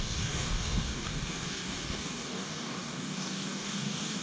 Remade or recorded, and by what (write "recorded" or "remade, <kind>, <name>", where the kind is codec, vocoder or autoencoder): remade, codec, DAC